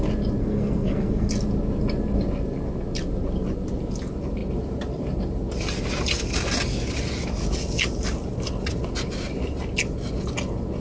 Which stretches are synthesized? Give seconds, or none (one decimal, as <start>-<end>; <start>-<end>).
0.4-1.3